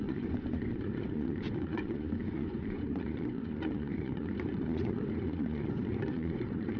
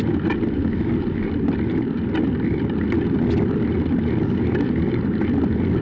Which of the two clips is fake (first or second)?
first